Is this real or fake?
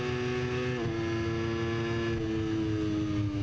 real